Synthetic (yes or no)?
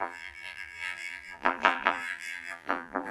yes